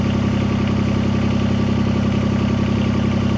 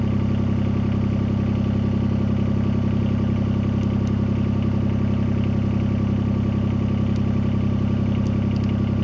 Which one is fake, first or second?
first